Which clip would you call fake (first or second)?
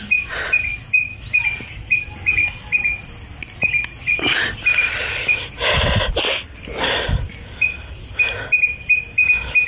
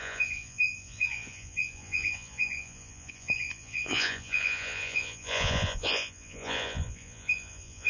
second